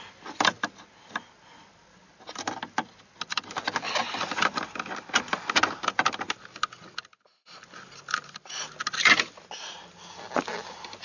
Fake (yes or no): no